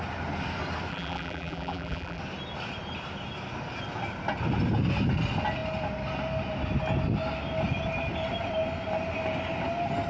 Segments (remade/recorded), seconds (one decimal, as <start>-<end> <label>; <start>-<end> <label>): 0.0-0.9 recorded; 0.9-2.2 remade; 2.2-10.1 recorded